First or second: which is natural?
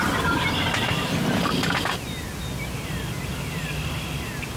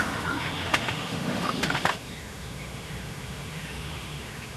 first